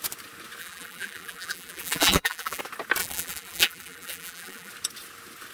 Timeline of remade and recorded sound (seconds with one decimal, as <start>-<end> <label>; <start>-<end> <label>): 0.0-0.6 recorded; 0.6-2.6 remade; 2.6-3.0 recorded; 3.0-4.7 remade; 4.7-5.5 recorded